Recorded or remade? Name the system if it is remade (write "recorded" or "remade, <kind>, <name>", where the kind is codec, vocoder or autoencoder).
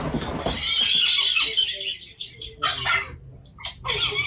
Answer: recorded